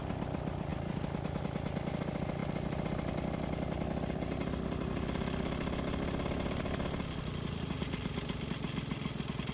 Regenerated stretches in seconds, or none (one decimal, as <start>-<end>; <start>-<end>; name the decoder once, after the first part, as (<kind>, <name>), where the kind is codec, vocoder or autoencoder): none